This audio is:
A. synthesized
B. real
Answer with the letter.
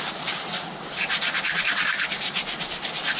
B